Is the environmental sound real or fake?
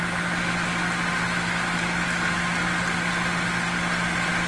real